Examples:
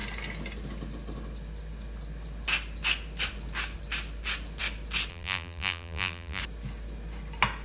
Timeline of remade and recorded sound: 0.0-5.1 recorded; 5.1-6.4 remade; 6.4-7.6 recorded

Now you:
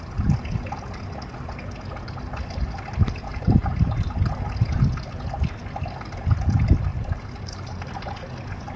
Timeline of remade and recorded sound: 0.0-3.3 recorded; 3.3-4.2 remade; 4.2-6.9 recorded; 6.9-7.9 remade; 7.9-8.8 recorded

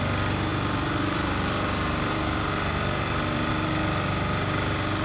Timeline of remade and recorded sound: 0.0-0.5 recorded; 0.5-3.5 remade; 3.5-5.0 recorded

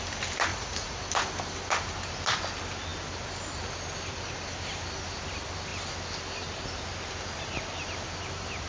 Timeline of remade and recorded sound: 0.0-0.5 recorded; 0.5-1.0 remade; 1.0-8.7 recorded

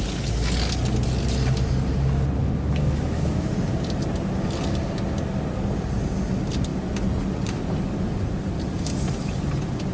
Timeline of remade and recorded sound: 0.0-2.4 recorded; 2.4-3.5 remade; 3.5-9.9 recorded

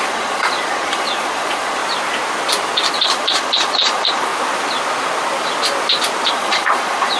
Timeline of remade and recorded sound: 0.0-1.8 remade; 1.8-2.9 recorded; 2.9-4.3 remade; 4.3-6.3 recorded; 6.3-7.2 remade

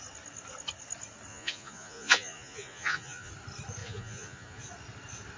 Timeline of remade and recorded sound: 0.0-1.3 recorded; 1.3-3.3 remade; 3.3-3.8 recorded; 3.8-4.6 remade; 4.6-5.4 recorded